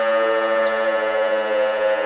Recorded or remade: remade